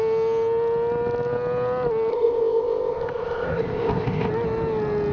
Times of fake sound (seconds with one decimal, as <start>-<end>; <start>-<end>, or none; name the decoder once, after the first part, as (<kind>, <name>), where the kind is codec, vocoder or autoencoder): 2.1-4.3 (codec, ZipCodec)